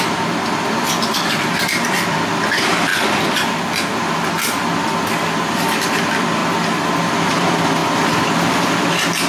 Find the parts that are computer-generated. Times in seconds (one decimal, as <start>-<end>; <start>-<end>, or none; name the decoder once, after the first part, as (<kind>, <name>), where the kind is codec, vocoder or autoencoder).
0.0-2.9 (vocoder, BigVGAN v2); 4.0-4.6; 6.0-6.4; 7.3-9.3